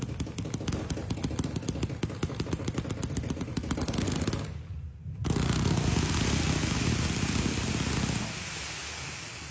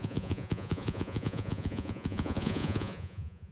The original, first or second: first